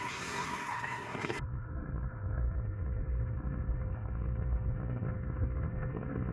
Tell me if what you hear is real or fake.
fake